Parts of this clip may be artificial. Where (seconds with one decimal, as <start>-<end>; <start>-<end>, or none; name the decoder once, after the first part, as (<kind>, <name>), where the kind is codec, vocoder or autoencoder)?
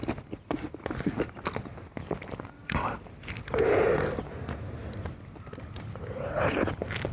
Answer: none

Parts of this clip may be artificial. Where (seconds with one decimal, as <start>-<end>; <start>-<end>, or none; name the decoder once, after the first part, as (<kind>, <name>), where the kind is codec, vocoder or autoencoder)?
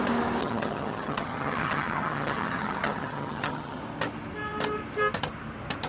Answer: 0.4-3.8 (vocoder, HiFi-GAN)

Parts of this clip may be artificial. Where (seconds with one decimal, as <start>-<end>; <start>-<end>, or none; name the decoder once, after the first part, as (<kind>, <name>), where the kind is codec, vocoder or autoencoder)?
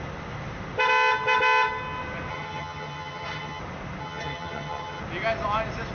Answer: 2.3-3.6 (vocoder, HiFi-GAN); 4.0-5.0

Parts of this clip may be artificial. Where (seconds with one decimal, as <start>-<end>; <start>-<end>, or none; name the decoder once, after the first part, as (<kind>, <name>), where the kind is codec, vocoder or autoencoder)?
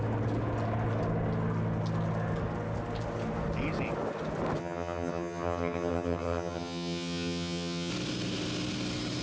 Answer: 4.6-7.9 (vocoder, HiFi-GAN)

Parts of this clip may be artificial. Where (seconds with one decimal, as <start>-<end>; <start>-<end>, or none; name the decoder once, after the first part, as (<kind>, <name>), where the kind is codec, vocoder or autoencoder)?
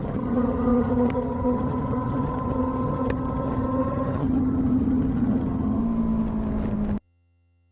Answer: 0.0-5.8 (vocoder, HiFi-GAN); 7.0-7.7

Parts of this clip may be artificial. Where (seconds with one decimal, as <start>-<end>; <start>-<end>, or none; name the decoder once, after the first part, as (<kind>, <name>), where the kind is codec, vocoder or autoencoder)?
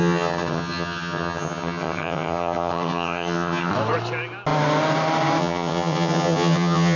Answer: 0.0-3.7 (vocoder, HiFi-GAN); 5.4-7.0